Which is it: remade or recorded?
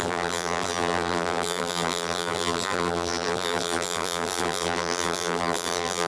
remade